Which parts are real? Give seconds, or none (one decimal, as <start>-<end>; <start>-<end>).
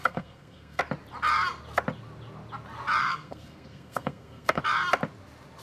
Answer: 0.8-3.0; 4.6-5.6